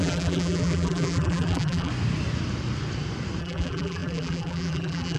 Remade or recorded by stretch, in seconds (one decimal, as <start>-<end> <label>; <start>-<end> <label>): 0.0-1.9 remade; 1.9-3.4 recorded; 3.4-5.2 remade